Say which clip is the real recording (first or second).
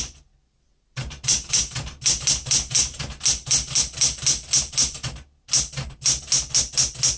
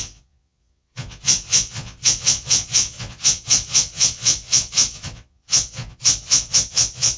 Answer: first